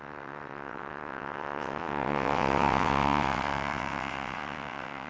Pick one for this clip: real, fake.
fake